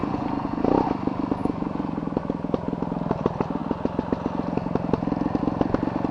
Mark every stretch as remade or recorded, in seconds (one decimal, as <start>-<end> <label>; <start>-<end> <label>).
0.0-0.6 remade; 0.6-1.4 recorded; 1.4-2.2 remade; 2.2-6.1 recorded